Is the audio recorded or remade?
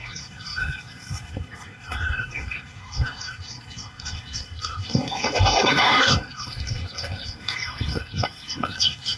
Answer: remade